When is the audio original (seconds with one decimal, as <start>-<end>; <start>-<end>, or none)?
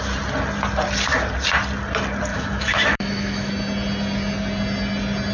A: 0.0-2.3; 3.5-5.3